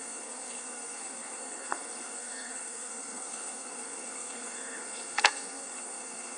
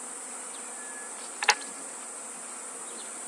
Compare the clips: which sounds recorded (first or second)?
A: second